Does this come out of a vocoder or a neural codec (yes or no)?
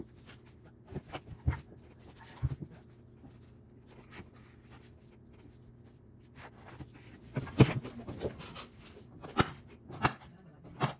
no